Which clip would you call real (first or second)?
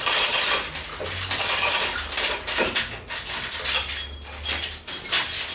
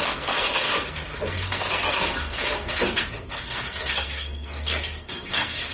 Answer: first